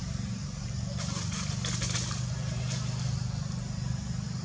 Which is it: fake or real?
real